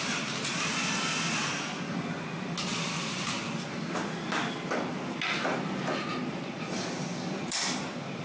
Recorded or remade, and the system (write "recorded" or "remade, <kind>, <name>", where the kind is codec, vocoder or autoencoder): recorded